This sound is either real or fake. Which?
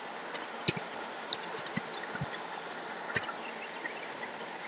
real